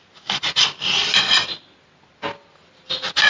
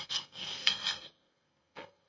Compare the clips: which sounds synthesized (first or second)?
second